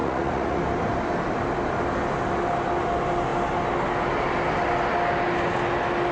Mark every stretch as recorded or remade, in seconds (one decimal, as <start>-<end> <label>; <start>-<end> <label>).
0.0-0.6 remade; 0.6-6.1 recorded